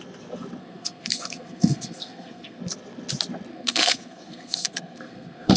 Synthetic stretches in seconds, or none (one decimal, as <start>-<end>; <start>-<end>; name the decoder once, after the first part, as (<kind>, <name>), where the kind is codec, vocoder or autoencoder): 0.6-2.6 (codec, SNAC); 3.5-5.6